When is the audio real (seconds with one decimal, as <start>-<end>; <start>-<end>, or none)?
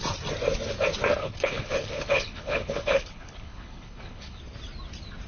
0.0-1.2; 4.4-5.3